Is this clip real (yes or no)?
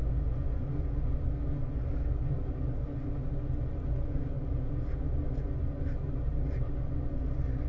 yes